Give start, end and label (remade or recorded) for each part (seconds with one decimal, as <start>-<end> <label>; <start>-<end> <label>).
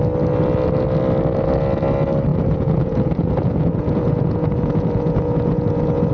0.0-2.3 recorded; 2.3-6.1 remade